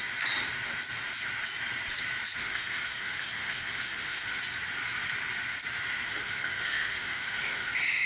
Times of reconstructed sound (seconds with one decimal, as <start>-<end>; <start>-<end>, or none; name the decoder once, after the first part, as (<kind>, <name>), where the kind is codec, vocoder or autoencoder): 2.4-4.4 (autoencoder, DAC-VAE); 6.1-8.1